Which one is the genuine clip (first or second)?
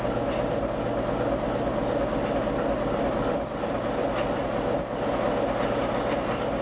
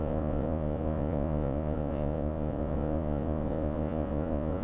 first